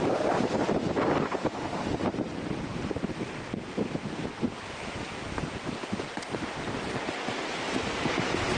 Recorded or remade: recorded